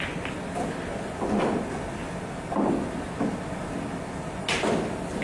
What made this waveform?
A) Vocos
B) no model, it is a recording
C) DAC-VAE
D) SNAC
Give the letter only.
B